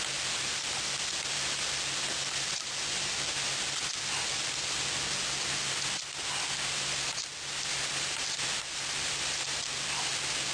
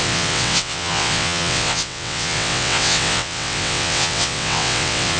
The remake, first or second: second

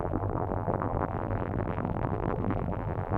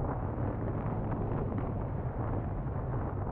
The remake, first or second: first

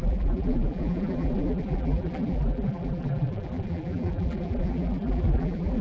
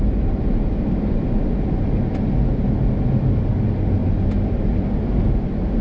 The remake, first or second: first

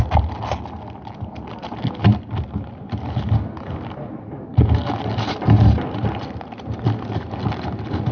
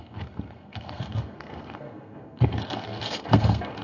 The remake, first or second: second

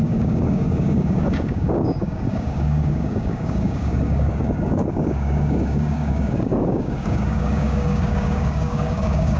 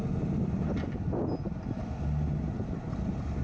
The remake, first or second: first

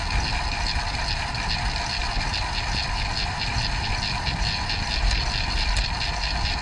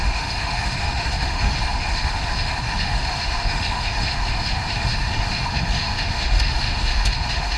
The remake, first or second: second